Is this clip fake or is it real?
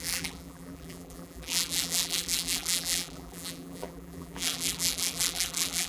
fake